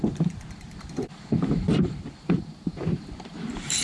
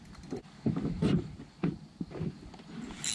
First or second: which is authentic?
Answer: second